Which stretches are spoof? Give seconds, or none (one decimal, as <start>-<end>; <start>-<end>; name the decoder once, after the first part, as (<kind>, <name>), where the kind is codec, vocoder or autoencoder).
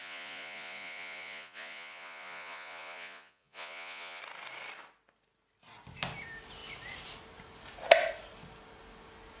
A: 0.0-4.2 (vocoder, Vocos)